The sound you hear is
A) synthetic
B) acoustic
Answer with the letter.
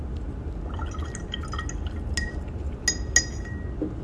B